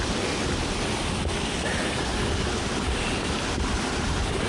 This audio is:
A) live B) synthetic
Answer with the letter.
A